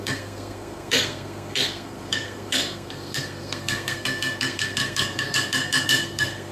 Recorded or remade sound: remade